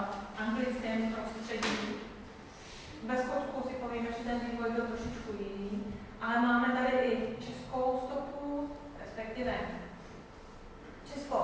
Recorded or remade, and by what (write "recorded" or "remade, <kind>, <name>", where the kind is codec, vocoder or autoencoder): recorded